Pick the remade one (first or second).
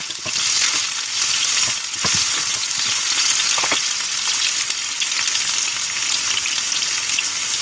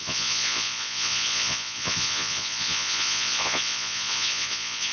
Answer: second